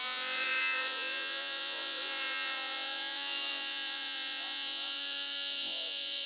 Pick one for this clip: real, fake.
fake